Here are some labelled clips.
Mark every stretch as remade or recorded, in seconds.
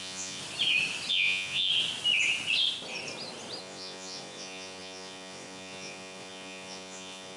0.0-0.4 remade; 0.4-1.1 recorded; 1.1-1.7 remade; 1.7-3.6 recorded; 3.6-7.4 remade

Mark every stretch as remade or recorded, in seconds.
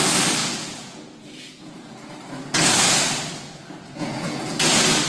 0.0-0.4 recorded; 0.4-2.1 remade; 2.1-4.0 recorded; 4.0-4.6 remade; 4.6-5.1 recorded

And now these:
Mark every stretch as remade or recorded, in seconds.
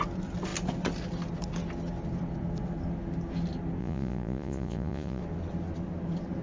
0.0-3.8 recorded; 3.8-5.2 remade; 5.2-6.4 recorded